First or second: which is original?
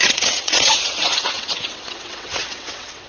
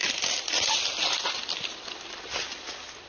second